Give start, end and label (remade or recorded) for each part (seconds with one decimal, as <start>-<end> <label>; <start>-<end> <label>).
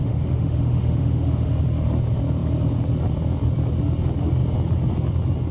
0.0-1.5 remade; 1.5-5.5 recorded